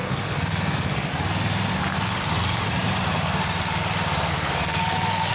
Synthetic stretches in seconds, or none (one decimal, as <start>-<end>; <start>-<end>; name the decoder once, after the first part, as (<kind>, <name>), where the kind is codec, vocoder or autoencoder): 0.0-1.1 (codec, SNAC); 4.3-5.3